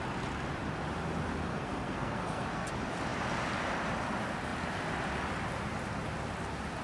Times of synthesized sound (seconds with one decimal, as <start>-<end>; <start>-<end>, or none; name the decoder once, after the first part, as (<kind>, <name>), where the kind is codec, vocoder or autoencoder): 1.5-2.7 (codec, SNAC)